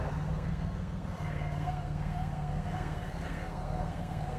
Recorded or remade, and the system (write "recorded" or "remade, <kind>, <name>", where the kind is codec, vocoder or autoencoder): remade, codec, SNAC